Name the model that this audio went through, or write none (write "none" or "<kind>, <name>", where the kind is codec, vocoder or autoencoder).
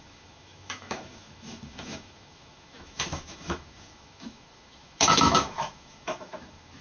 autoencoder, DAC-VAE